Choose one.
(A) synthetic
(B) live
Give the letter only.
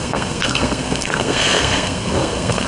A